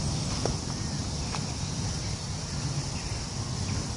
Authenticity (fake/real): real